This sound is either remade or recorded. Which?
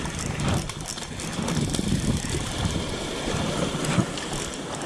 recorded